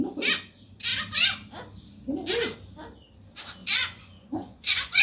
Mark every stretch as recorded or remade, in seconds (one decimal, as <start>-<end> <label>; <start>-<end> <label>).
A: 0.0-3.6 recorded; 3.6-5.0 remade

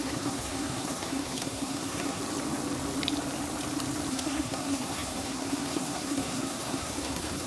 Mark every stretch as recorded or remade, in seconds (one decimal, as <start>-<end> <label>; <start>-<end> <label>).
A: 0.0-2.2 remade; 2.2-4.1 recorded; 4.1-7.5 remade

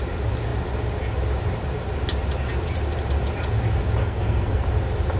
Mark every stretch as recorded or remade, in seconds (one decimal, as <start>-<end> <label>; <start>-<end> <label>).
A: 0.0-4.0 recorded; 4.0-4.6 remade; 4.6-5.2 recorded

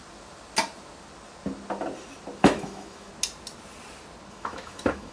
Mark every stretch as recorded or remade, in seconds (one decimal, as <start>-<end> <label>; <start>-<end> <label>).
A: 0.0-2.4 recorded; 2.4-3.1 remade; 3.1-4.3 recorded; 4.3-5.1 remade

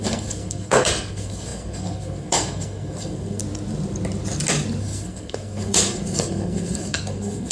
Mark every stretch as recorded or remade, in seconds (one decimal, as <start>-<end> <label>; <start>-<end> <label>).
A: 0.0-3.4 remade; 3.4-4.8 recorded; 4.8-7.5 remade

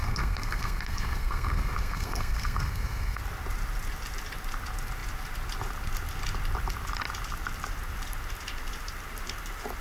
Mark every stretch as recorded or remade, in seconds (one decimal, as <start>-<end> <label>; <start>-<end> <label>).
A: 0.0-3.2 remade; 3.2-9.8 recorded

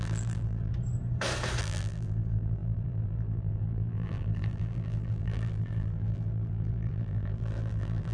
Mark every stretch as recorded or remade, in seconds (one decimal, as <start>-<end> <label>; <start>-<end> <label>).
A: 0.0-0.7 remade; 0.7-1.6 recorded; 1.6-8.1 remade